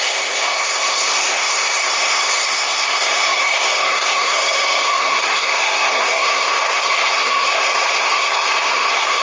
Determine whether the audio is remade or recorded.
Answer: remade